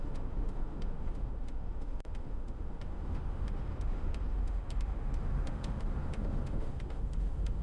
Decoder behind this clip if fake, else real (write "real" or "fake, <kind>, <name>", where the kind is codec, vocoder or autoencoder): fake, autoencoder, DAC-VAE